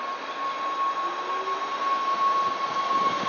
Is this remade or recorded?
recorded